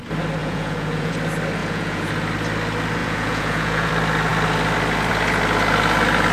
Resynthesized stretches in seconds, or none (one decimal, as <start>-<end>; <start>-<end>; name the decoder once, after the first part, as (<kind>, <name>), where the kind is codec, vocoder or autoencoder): 0.4-1.1 (vocoder, Vocos); 1.6-2.1; 3.0-3.9